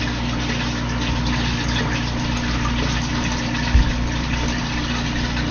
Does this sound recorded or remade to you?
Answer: recorded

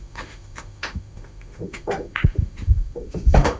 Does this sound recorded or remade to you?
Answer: remade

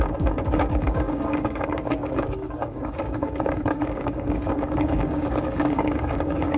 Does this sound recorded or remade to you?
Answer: remade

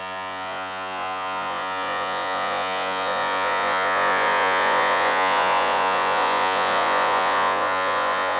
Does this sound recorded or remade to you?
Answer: remade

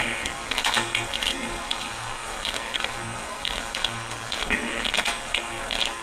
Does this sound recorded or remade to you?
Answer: remade